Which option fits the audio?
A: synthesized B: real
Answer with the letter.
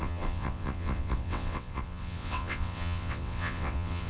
A